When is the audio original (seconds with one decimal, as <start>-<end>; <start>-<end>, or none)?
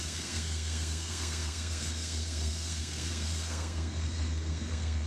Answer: none